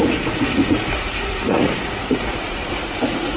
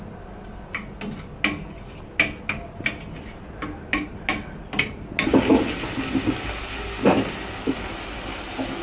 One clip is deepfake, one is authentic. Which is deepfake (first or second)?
first